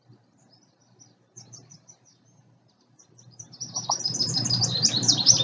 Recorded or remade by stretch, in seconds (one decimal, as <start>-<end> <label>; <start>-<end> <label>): 0.0-5.4 remade